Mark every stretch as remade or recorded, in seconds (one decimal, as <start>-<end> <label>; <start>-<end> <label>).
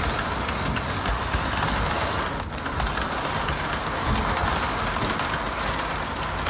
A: 0.0-6.5 recorded